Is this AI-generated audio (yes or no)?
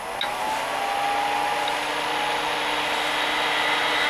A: no